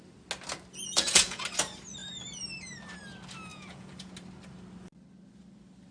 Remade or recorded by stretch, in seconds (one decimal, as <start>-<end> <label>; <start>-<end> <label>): 0.0-0.7 recorded; 0.7-1.4 remade; 1.4-3.5 recorded; 3.5-4.1 remade; 4.1-5.9 recorded